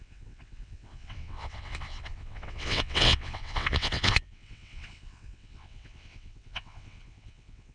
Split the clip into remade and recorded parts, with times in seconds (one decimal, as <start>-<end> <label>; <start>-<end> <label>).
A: 0.0-7.7 remade